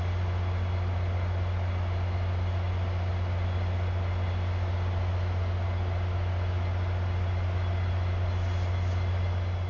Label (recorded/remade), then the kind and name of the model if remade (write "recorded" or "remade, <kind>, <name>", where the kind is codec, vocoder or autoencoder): recorded